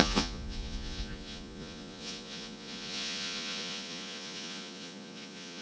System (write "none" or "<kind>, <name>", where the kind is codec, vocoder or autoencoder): vocoder, Vocos